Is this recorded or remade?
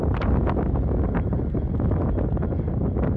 recorded